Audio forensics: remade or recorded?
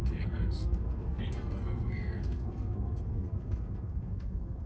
remade